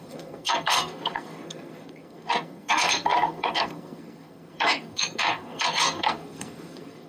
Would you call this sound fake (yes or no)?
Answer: yes